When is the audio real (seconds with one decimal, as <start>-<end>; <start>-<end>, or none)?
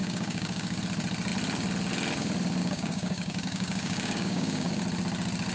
0.8-2.6; 4.8-5.5